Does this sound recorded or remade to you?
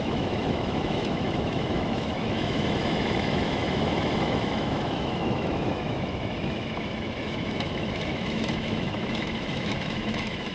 remade